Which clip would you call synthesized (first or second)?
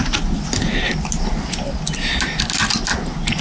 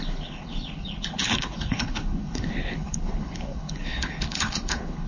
second